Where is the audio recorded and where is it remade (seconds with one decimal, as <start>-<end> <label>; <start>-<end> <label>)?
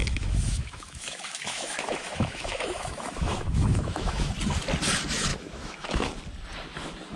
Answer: 0.0-4.3 remade; 4.3-5.3 recorded; 5.3-6.1 remade; 6.1-7.2 recorded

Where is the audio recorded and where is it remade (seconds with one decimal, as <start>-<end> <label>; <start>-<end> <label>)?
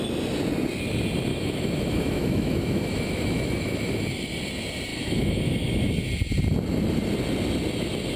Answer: 0.0-1.3 recorded; 1.3-4.0 remade; 4.0-4.9 recorded; 4.9-5.9 remade; 5.9-8.2 recorded